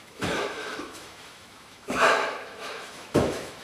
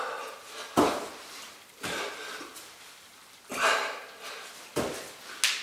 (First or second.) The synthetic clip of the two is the first